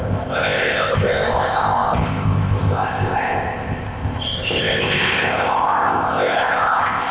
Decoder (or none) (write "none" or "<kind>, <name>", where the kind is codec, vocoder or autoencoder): codec, ZipCodec